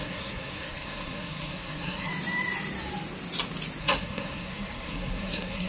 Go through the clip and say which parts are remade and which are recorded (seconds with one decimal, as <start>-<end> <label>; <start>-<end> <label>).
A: 0.0-2.1 remade; 2.1-3.8 recorded; 3.8-5.7 remade